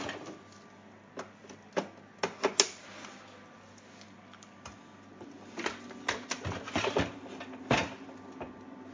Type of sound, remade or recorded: recorded